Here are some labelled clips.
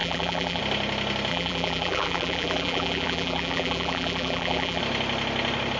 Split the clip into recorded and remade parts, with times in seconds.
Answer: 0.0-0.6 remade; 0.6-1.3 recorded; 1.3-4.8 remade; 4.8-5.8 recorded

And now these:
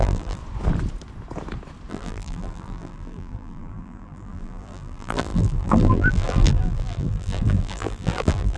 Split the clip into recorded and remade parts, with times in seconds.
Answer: 0.0-0.4 remade; 0.4-1.9 recorded; 1.9-8.6 remade